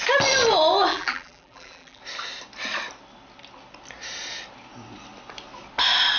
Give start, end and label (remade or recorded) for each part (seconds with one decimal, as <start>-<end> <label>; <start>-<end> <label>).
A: 0.0-0.9 recorded; 0.9-2.0 remade; 2.0-6.2 recorded